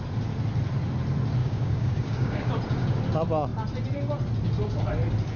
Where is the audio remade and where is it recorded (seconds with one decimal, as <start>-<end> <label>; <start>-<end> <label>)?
0.0-1.4 recorded; 1.4-2.5 remade; 2.5-5.4 recorded